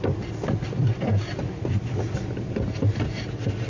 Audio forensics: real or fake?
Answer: real